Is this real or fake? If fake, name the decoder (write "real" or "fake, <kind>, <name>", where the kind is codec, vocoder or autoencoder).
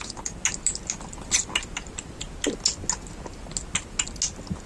real